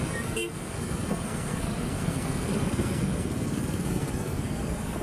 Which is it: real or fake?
fake